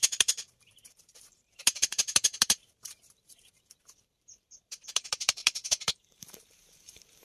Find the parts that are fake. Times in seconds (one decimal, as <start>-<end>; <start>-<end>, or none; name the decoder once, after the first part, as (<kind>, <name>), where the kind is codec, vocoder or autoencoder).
0.0-7.2 (vocoder, BigVGAN v2)